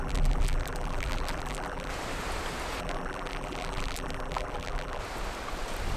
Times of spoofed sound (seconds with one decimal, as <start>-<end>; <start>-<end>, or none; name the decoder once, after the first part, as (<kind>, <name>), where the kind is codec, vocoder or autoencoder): 0.0-1.9 (vocoder, BigVGAN v2); 2.8-5.0